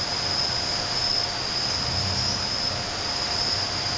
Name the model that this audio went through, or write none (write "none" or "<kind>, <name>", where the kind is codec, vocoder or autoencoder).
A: none